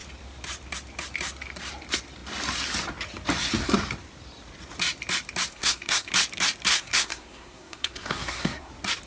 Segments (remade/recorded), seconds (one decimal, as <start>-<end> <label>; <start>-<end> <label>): 0.0-5.5 recorded; 5.5-6.1 remade; 6.1-6.7 recorded; 6.7-8.7 remade; 8.7-9.1 recorded